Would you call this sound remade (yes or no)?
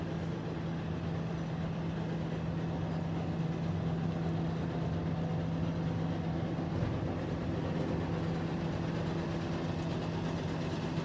no